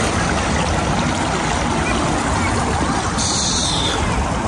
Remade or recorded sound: recorded